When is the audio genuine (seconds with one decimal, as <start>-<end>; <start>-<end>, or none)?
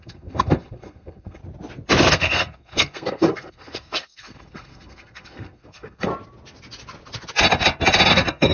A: 1.4-2.1; 6.1-8.1